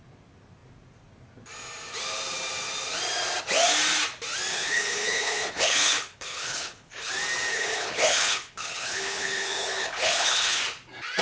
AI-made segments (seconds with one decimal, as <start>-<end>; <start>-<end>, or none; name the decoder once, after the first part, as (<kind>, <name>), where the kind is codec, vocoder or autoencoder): 4.5-7.1 (codec, HILCodec); 7.5-10.6